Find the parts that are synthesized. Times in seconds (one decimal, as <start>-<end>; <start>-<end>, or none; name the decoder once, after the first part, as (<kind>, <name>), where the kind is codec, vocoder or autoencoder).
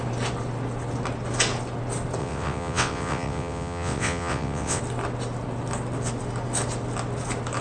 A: 2.2-4.8 (vocoder, WaveNeXt)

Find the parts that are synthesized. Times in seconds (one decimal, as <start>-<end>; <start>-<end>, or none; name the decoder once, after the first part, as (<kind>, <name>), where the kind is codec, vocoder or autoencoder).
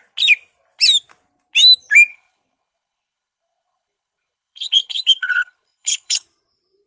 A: 2.1-6.2 (codec, HILCodec)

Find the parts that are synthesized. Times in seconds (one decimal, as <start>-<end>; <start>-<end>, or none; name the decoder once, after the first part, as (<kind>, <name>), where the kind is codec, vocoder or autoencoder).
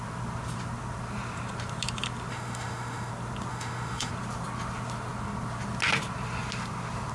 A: 2.3-3.1 (autoencoder, DAC-VAE); 3.5-4.1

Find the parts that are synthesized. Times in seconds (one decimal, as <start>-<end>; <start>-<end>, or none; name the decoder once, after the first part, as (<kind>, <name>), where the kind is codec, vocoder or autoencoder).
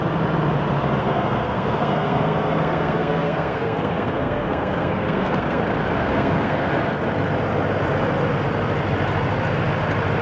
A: 1.0-5.6 (codec, SNAC); 6.0-6.7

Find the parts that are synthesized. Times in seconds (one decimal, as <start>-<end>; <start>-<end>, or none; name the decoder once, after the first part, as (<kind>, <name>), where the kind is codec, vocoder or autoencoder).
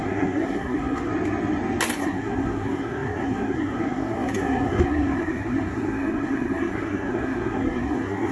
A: 0.0-1.1 (codec, SNAC); 2.0-8.3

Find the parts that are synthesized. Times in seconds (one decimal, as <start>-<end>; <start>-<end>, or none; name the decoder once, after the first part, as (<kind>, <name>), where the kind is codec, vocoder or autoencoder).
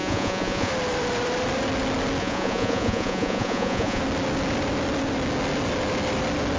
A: 0.0-0.7 (vocoder, Vocos); 2.2-4.0